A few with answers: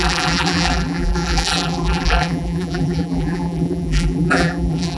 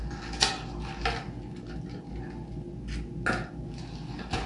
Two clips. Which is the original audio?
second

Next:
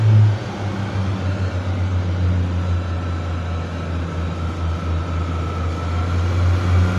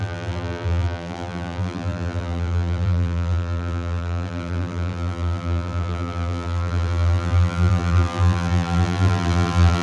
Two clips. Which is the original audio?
first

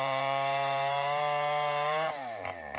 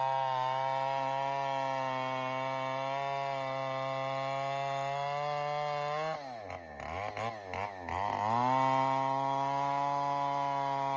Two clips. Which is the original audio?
second